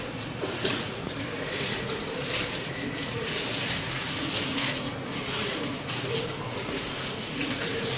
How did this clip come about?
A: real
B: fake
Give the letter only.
B